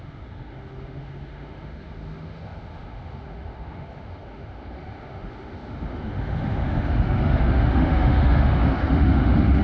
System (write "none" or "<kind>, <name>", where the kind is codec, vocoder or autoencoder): autoencoder, DAC-VAE